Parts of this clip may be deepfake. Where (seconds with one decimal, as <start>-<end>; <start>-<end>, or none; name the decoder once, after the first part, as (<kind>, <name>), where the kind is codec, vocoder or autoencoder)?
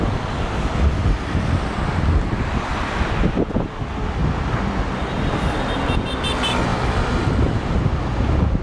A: none